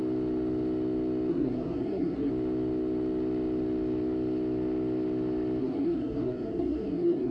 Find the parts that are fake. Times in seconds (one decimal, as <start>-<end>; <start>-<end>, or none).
1.3-2.3; 5.6-7.3